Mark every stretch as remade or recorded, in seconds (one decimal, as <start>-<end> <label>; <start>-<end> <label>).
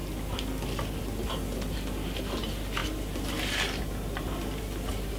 0.0-2.8 recorded; 2.8-4.6 remade; 4.6-5.2 recorded